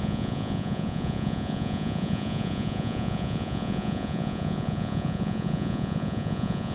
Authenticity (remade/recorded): remade